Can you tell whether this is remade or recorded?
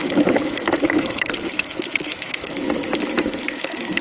remade